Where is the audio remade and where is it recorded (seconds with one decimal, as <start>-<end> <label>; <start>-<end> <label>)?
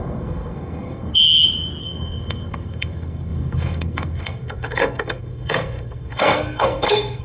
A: 0.0-1.1 remade; 1.1-1.8 recorded; 1.8-7.2 remade